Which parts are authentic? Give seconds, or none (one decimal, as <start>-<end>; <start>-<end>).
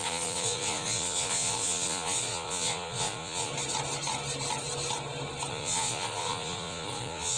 3.5-5.5